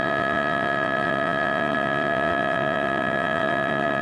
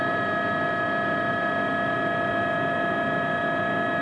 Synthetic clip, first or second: first